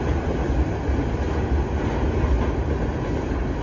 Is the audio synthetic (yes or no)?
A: no